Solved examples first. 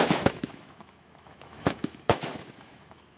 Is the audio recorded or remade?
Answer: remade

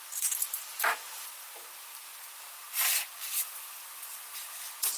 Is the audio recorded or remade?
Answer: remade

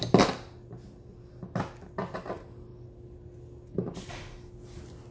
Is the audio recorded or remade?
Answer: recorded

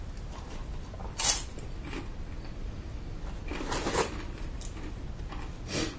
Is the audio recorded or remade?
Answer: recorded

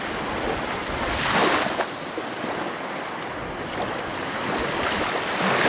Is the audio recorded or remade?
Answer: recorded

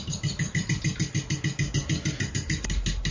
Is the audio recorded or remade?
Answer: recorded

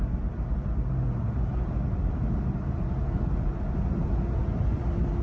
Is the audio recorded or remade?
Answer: recorded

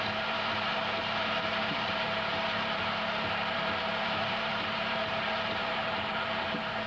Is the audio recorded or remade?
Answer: remade